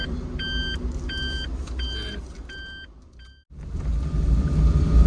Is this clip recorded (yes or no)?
yes